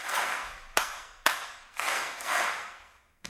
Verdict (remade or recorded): remade